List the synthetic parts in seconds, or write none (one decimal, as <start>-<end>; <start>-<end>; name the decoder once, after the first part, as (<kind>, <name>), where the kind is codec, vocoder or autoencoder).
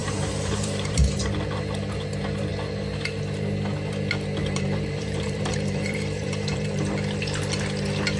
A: 0.0-1.2 (vocoder, BigVGAN v2); 4.4-6.8